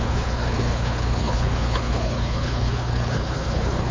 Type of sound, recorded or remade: remade